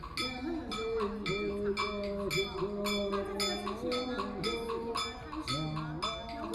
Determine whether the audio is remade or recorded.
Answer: recorded